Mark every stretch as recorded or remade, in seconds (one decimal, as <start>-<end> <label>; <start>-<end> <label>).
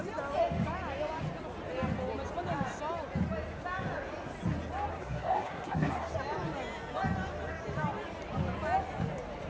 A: 0.0-4.9 recorded; 4.9-6.1 remade; 6.1-9.5 recorded